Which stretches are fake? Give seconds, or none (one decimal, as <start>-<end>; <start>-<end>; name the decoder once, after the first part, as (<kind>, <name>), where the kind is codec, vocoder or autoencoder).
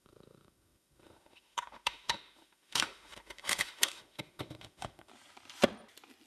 0.0-5.1 (autoencoder, DAC-VAE)